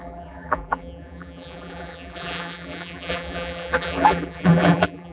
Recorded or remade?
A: remade